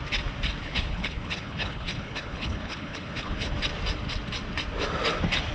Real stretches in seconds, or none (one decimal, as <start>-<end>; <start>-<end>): 0.0-0.6; 3.5-5.5